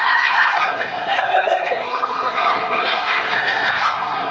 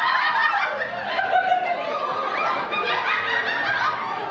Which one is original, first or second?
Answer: second